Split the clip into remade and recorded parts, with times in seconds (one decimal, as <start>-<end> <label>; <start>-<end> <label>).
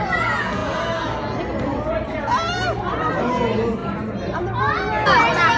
0.0-5.6 recorded